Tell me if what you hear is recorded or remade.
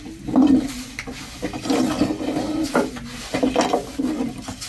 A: recorded